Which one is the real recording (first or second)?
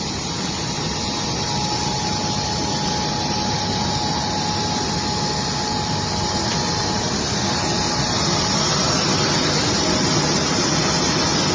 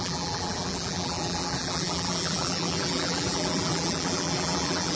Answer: first